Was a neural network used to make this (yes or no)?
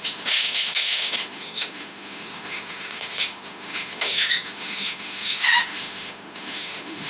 yes